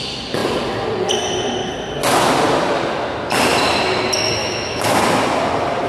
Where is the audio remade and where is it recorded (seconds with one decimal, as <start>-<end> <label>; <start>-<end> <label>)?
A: 0.0-4.4 recorded; 4.4-5.0 remade; 5.0-5.9 recorded